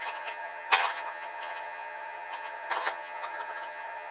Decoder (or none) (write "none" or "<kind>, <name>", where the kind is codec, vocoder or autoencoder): vocoder, HiFi-GAN